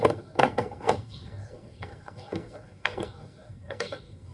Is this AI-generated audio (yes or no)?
yes